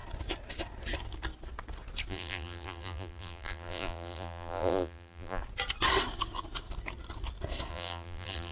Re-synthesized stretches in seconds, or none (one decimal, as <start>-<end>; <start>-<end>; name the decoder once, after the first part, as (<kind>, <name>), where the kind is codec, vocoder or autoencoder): 2.1-5.4 (vocoder, BigVGAN v2); 7.7-8.5